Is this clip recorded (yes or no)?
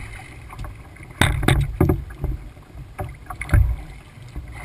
yes